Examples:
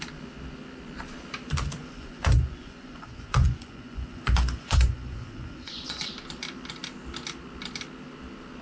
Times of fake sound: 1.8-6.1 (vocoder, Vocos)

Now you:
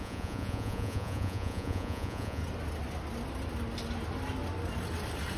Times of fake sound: 0.0-2.4 (vocoder, Vocos)

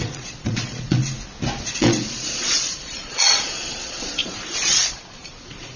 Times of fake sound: 0.0-1.0 (vocoder, Vocos); 1.6-5.8

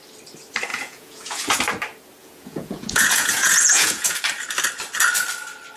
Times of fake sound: 0.7-1.6 (vocoder, Vocos); 2.2-4.2

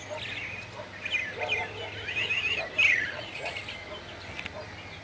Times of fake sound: 2.9-3.5 (vocoder, Vocos)

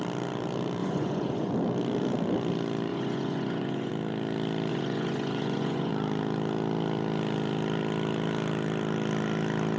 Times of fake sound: 0.8-1.5 (vocoder, Vocos); 2.9-3.9; 4.7-5.9

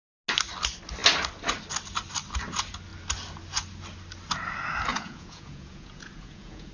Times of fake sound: 4.9-6.7 (vocoder, Vocos)

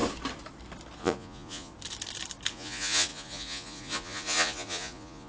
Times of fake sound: 1.0-1.7 (vocoder, Vocos); 2.5-5.3